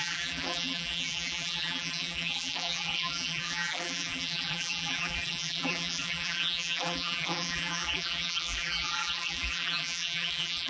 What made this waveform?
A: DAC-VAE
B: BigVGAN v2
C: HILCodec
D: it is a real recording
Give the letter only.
B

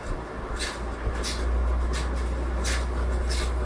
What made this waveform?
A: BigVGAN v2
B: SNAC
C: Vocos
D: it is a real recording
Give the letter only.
D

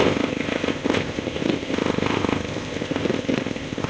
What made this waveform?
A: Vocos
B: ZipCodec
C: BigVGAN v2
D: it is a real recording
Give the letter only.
B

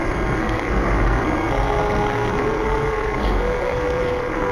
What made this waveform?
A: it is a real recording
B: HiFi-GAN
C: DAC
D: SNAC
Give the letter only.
D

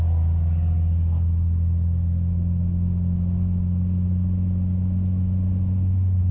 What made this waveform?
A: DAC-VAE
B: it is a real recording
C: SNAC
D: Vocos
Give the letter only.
B